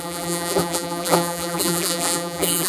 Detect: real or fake fake